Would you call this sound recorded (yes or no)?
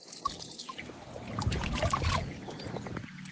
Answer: yes